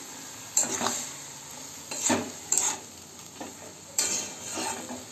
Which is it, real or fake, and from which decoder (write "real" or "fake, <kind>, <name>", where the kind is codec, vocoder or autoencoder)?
real